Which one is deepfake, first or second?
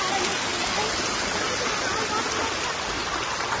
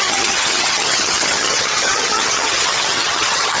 second